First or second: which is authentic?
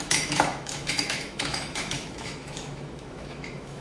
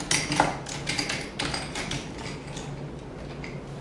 second